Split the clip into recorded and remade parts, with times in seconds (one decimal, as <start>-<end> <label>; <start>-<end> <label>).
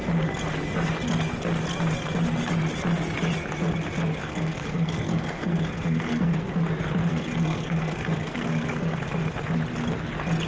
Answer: 0.0-4.2 recorded; 4.2-6.5 remade; 6.5-7.0 recorded; 7.0-9.0 remade; 9.0-10.5 recorded